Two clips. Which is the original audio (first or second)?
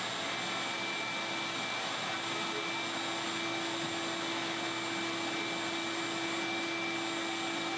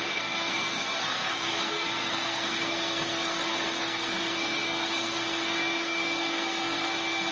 first